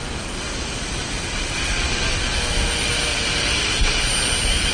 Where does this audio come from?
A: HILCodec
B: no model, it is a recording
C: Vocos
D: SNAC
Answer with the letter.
B